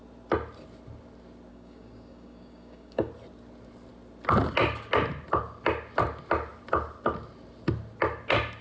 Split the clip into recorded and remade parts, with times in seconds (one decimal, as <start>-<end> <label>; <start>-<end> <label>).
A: 0.0-1.5 recorded; 1.5-3.1 remade; 3.1-8.6 recorded